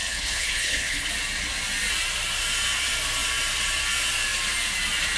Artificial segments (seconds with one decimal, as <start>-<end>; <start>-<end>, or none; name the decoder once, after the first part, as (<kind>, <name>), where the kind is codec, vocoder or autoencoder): 0.0-1.1 (codec, HILCodec)